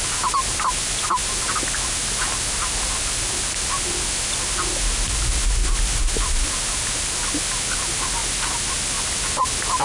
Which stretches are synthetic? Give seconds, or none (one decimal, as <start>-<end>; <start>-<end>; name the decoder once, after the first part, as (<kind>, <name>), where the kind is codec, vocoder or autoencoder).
none